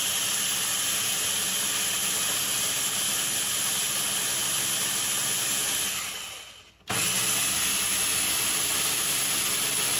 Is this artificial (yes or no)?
no